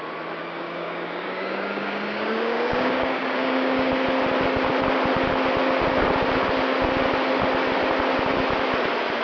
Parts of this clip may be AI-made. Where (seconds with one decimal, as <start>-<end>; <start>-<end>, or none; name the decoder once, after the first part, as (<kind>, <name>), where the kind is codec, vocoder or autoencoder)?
0.4-3.9 (codec, DAC)